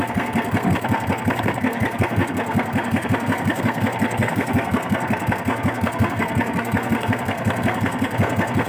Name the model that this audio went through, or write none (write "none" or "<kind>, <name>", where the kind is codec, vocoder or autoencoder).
codec, SNAC